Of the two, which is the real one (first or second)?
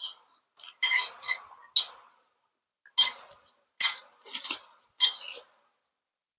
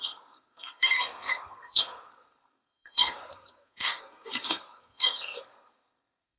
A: first